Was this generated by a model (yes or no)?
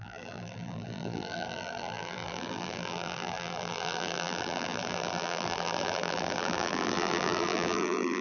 yes